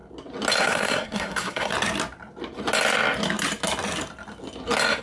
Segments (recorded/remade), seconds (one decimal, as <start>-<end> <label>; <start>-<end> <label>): 0.0-0.6 recorded; 0.6-1.7 remade; 1.7-5.0 recorded